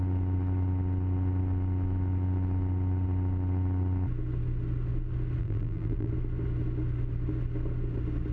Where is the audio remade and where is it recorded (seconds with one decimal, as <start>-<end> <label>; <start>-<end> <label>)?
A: 0.0-5.4 recorded; 5.4-6.1 remade; 6.1-8.3 recorded